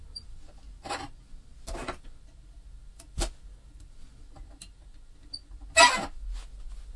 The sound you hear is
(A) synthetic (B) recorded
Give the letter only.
B